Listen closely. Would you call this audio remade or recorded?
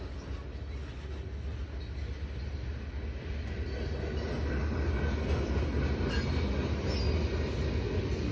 recorded